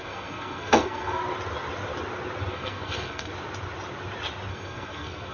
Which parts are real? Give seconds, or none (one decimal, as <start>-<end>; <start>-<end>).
1.2-2.5; 3.3-4.5